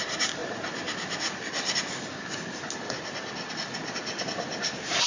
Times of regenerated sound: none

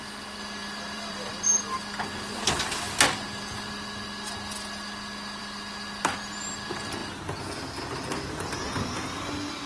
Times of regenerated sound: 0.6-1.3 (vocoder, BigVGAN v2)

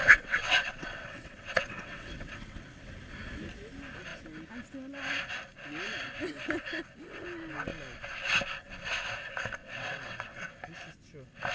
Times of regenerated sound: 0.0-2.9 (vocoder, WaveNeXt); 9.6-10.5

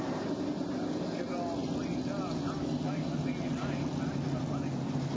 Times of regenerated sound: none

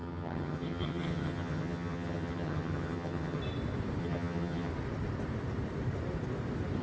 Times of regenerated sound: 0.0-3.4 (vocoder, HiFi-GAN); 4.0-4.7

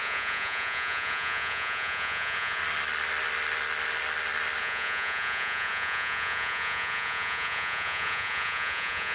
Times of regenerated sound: 0.0-2.6 (vocoder, Vocos); 4.6-9.1